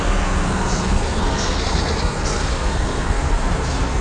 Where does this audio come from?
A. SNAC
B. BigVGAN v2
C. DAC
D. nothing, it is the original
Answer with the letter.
A